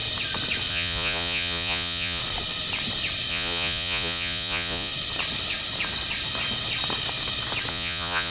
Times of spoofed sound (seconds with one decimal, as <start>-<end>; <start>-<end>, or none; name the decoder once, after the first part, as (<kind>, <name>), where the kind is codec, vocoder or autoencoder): 0.7-2.2 (vocoder, Vocos); 3.3-4.9; 7.7-8.3